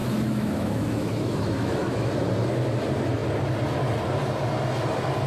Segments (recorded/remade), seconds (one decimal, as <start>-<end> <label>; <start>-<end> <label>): 0.0-2.1 remade; 2.1-5.3 recorded